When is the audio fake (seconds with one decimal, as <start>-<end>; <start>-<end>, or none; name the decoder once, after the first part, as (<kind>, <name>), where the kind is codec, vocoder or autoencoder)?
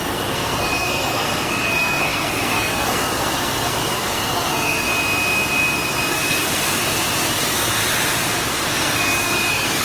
0.0-4.9 (codec, SNAC); 6.1-6.8; 7.3-7.8; 8.5-9.8